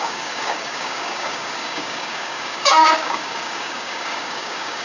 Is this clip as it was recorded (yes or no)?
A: no